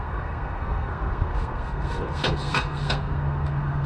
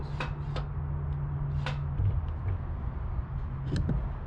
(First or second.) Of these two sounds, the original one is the second